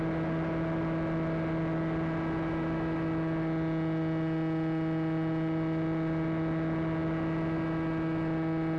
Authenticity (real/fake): real